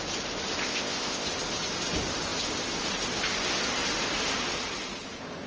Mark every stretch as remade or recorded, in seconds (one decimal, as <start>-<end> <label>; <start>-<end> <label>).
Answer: 0.0-0.6 recorded; 0.6-1.3 remade; 1.3-5.5 recorded